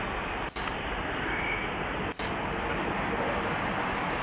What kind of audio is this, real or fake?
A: real